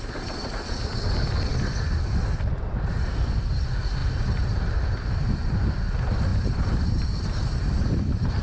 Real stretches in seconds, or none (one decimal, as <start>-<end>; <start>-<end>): 0.0-6.3; 8.0-8.4